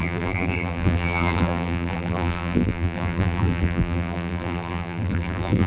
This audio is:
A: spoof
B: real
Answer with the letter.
A